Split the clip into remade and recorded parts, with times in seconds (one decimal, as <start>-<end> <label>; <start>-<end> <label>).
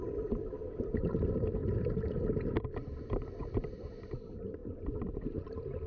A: 0.0-1.6 remade; 1.6-3.4 recorded; 3.4-5.9 remade